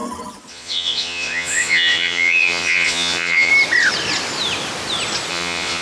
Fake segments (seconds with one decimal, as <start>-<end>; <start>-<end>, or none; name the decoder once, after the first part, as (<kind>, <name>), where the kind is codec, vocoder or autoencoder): 0.5-3.5 (vocoder, Vocos); 5.3-5.8